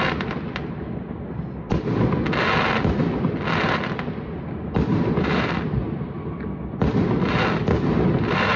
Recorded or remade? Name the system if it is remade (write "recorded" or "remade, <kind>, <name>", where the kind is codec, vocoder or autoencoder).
recorded